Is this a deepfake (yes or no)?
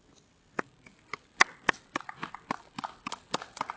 no